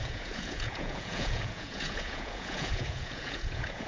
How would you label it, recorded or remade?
remade